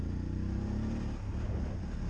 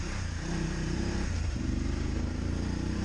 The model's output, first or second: second